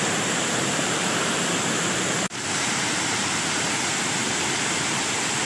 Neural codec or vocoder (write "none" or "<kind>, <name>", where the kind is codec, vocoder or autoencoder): vocoder, BigVGAN v2